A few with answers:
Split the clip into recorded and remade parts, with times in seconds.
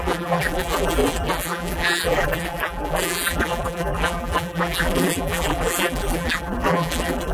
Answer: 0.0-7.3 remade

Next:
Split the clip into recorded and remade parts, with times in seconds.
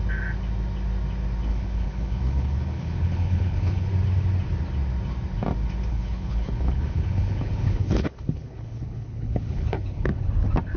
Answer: 0.0-1.5 recorded; 1.5-3.9 remade; 3.9-5.9 recorded; 5.9-10.3 remade; 10.3-10.8 recorded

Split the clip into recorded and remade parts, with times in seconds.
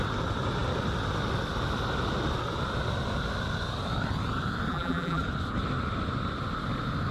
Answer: 0.0-4.7 recorded; 4.7-5.2 remade; 5.2-7.1 recorded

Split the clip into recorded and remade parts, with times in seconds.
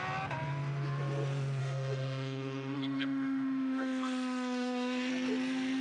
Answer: 0.0-1.6 recorded; 1.6-5.1 remade; 5.1-5.8 recorded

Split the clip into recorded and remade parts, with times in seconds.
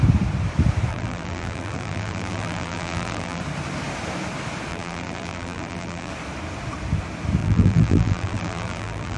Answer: 0.0-0.9 recorded; 0.9-3.4 remade; 3.4-4.7 recorded; 4.7-6.1 remade; 6.1-7.4 recorded; 7.4-9.2 remade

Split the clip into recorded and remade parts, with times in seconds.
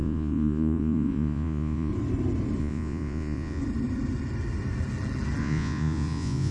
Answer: 0.0-1.9 remade; 1.9-2.6 recorded; 2.6-3.6 remade; 3.6-5.4 recorded; 5.4-6.5 remade